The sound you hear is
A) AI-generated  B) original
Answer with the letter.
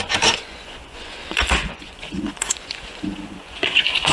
A